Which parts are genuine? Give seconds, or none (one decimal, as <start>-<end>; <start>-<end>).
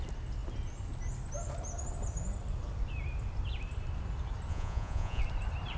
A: 0.0-4.5; 5.2-5.8